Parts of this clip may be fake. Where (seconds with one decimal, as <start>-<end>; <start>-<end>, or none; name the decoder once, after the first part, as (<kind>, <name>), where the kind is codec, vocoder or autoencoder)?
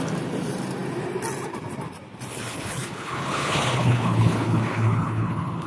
2.3-5.7 (codec, HILCodec)